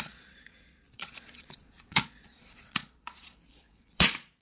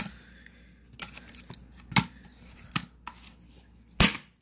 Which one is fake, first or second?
first